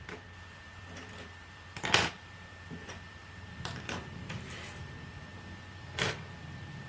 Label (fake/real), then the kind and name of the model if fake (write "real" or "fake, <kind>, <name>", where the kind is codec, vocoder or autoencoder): fake, vocoder, BigVGAN v2